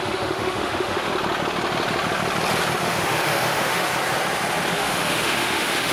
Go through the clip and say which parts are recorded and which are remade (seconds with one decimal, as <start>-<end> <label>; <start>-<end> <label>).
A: 0.0-1.1 remade; 1.1-2.8 recorded; 2.8-3.9 remade; 3.9-4.7 recorded; 4.7-5.9 remade